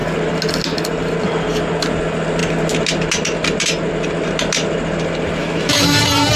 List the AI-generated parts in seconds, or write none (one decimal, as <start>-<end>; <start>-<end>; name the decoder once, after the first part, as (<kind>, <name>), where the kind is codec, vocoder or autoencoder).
5.4-6.0 (autoencoder, DAC-VAE)

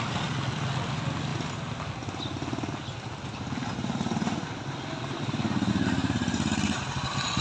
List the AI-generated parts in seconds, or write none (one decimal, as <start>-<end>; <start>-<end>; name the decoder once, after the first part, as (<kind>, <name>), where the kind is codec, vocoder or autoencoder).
none

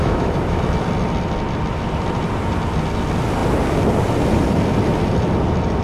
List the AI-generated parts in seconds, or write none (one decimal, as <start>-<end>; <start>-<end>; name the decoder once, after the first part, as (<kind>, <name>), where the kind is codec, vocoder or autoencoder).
0.0-0.6 (autoencoder, DAC-VAE)